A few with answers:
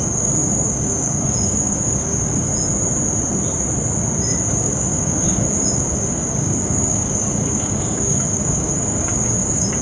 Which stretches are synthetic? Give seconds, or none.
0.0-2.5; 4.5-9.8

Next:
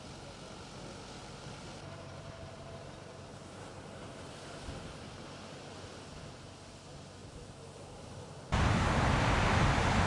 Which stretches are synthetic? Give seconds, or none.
1.2-4.3; 7.2-8.2

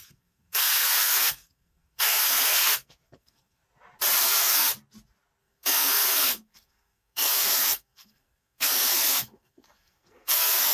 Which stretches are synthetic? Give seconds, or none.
0.0-3.6; 4.2-4.7; 5.4-10.7

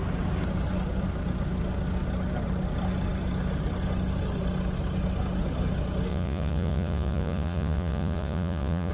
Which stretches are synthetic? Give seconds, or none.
6.1-8.9

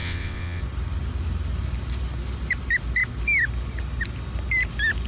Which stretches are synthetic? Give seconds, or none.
0.0-0.6

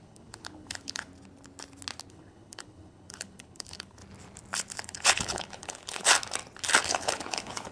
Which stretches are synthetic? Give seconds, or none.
0.0-1.1; 2.1-4.0; 4.7-6.1; 6.8-7.7

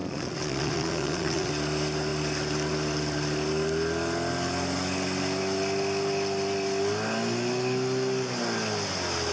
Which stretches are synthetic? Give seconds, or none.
0.0-1.5

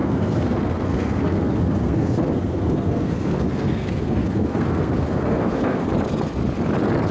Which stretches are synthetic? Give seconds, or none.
0.0-5.9